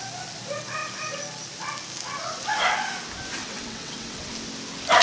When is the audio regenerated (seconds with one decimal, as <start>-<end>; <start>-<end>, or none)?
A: 3.4-4.3